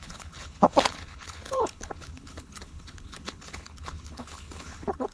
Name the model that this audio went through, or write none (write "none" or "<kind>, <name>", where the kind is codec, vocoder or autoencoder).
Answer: codec, HILCodec